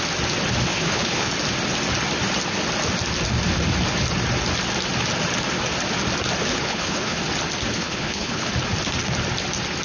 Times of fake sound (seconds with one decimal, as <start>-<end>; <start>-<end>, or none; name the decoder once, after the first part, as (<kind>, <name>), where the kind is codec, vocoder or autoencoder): 0.7-1.3 (codec, HILCodec); 6.5-7.2; 7.7-8.5